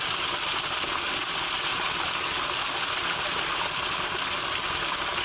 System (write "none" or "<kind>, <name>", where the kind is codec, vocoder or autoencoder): none